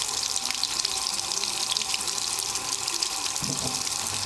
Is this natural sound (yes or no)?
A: yes